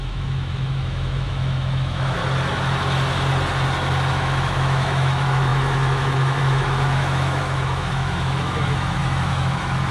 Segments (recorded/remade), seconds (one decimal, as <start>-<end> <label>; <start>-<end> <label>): 0.0-2.2 remade; 2.2-4.1 recorded; 4.1-9.9 remade